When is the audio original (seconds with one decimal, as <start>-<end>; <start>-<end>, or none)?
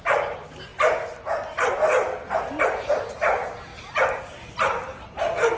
3.7-4.2